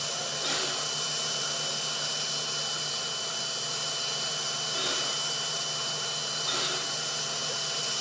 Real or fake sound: fake